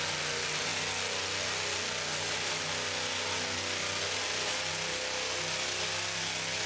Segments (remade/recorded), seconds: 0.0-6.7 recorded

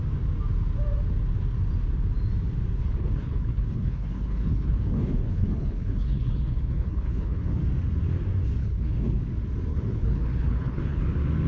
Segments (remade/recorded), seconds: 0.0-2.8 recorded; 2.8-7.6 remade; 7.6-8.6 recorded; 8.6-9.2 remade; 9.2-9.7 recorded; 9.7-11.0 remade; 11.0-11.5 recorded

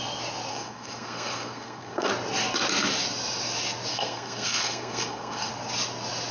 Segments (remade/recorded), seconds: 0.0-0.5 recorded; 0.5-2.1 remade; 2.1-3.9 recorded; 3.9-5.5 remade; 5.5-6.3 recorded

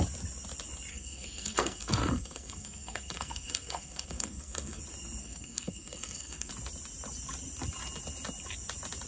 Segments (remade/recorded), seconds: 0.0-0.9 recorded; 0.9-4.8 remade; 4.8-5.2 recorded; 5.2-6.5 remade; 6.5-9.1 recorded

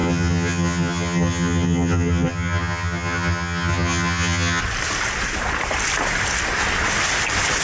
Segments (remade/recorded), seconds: 0.0-4.6 remade; 4.6-7.6 recorded

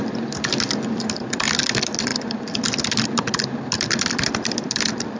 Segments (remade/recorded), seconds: 0.0-5.2 remade

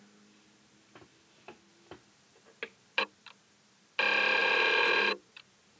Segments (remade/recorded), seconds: 0.0-4.4 recorded; 4.4-5.8 remade